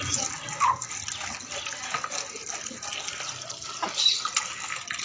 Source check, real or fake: real